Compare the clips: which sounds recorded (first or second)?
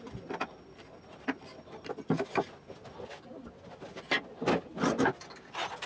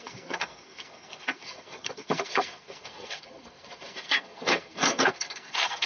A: first